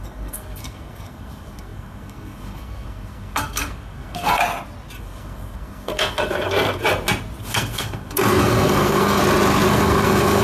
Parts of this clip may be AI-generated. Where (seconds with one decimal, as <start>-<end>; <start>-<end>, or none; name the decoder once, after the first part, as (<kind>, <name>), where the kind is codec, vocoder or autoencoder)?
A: 0.0-4.4 (codec, SNAC); 5.0-6.8; 7.4-9.2; 9.7-10.4